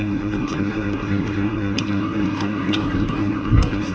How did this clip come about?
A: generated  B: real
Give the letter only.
A